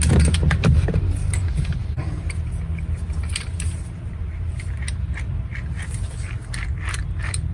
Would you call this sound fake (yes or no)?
no